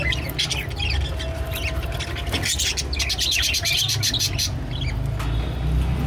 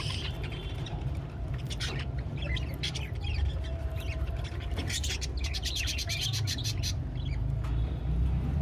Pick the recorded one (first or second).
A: first